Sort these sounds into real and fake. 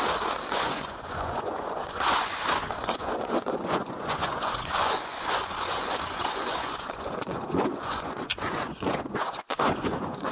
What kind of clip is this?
fake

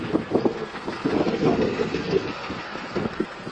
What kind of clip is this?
fake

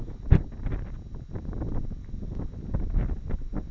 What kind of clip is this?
real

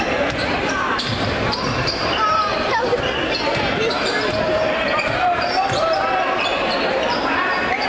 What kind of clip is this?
fake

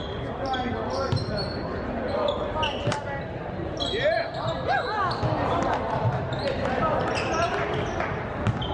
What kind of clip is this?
real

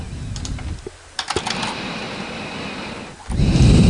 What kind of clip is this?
real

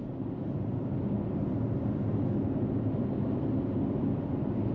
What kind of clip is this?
real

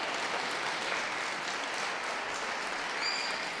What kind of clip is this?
real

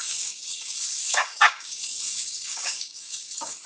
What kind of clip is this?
fake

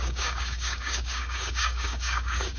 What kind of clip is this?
fake